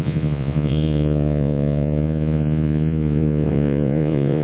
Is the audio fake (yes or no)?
yes